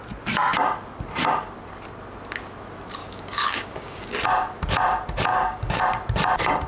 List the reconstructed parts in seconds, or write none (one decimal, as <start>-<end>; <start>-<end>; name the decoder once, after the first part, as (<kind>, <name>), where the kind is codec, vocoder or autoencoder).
3.0-4.1 (codec, DAC); 5.3-5.8